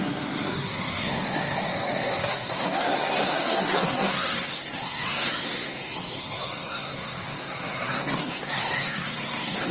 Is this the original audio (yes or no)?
no